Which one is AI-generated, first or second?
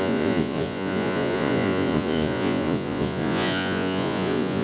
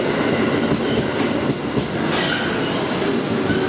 first